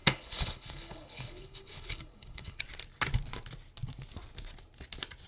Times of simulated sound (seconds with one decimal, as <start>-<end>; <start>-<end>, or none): 0.0-2.6